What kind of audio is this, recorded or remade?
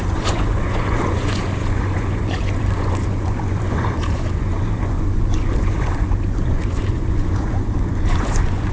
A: remade